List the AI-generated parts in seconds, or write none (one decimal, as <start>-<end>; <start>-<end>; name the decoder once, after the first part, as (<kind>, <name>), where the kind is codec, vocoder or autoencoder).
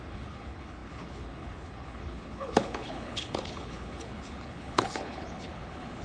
0.0-6.0 (codec, HILCodec)